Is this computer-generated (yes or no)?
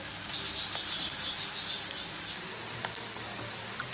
no